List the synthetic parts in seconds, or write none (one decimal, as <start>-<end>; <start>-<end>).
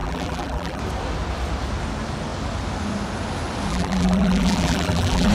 0.0-0.8; 3.7-5.3